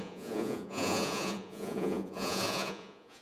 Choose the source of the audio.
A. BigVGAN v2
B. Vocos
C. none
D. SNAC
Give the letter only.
B